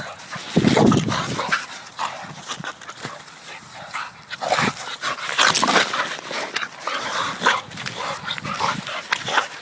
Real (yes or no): yes